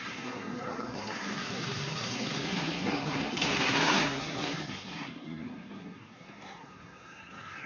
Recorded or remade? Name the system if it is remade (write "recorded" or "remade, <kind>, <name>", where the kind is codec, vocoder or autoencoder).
remade, codec, SNAC